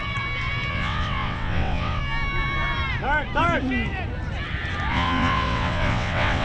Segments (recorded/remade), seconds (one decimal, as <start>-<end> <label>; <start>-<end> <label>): 0.0-0.7 recorded; 0.7-2.0 remade; 2.0-4.9 recorded; 4.9-6.4 remade